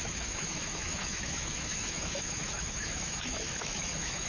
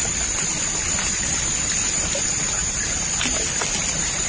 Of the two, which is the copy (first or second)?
first